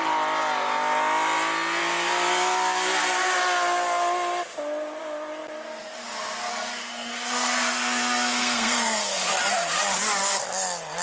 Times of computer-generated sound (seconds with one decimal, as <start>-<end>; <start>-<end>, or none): 6.5-9.3